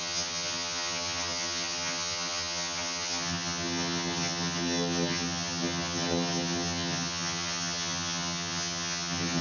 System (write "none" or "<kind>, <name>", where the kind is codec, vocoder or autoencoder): vocoder, HiFi-GAN